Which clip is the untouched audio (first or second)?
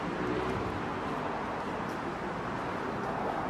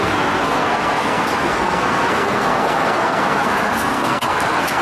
first